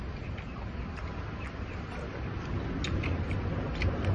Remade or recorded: recorded